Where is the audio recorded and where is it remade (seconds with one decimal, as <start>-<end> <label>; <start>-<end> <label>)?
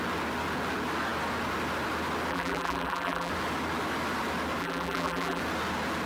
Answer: 0.0-2.3 recorded; 2.3-3.3 remade; 3.3-4.6 recorded; 4.6-5.4 remade; 5.4-6.1 recorded